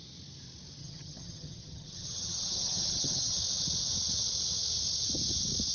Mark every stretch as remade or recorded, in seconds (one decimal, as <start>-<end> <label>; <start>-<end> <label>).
0.0-0.8 recorded; 0.8-3.4 remade; 3.4-5.7 recorded